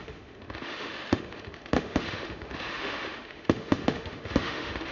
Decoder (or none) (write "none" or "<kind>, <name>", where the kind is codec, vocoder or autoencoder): autoencoder, DAC-VAE